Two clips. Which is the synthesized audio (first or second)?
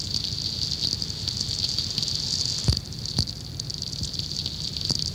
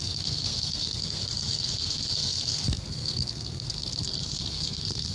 second